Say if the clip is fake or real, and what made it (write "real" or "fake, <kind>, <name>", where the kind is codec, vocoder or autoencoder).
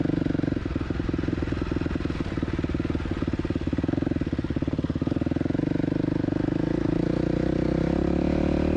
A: real